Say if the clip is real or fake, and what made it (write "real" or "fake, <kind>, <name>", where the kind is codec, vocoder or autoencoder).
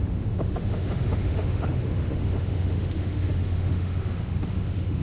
fake, autoencoder, DAC-VAE